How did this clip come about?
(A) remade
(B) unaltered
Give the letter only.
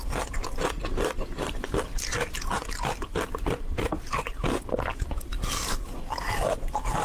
B